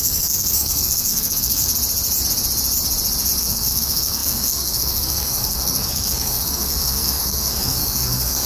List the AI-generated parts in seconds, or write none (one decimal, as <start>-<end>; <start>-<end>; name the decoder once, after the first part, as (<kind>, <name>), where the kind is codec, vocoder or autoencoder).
0.0-1.7 (codec, SNAC); 3.4-8.5